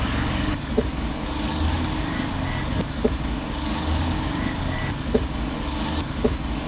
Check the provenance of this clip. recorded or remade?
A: remade